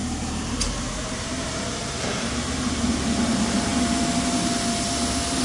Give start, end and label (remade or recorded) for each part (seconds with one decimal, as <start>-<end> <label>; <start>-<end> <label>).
0.0-3.7 remade; 3.7-5.4 recorded